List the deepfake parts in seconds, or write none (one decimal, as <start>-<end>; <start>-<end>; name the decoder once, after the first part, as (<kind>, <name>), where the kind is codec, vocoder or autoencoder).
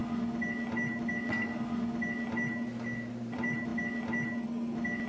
3.1-3.7 (vocoder, BigVGAN v2)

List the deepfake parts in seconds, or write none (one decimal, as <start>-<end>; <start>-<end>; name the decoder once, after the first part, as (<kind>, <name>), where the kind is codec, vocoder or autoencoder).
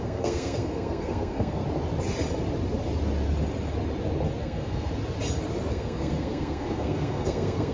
0.0-1.6 (codec, SNAC); 4.4-4.9; 5.7-7.7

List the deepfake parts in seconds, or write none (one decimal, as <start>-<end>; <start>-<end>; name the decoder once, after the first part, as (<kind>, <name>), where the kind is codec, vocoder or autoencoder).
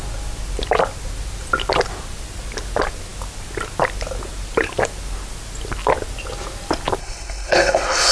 7.0-8.1 (codec, HILCodec)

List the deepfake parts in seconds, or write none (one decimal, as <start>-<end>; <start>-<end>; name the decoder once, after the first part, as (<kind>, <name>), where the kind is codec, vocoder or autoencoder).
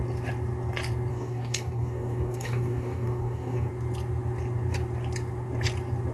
1.1-3.7 (codec, DAC)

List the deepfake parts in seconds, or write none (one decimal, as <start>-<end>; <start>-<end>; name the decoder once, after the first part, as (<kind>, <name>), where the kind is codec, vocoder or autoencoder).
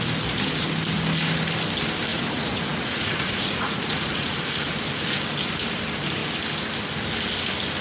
2.1-4.3 (vocoder, Vocos)